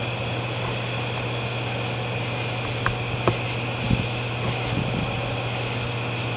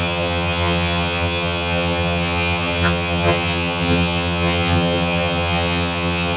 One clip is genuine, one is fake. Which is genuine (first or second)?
first